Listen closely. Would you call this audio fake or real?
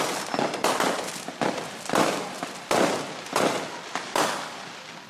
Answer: fake